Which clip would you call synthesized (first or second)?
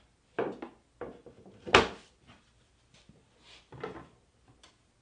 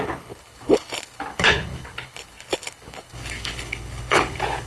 second